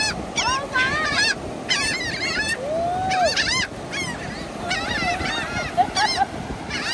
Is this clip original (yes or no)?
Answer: yes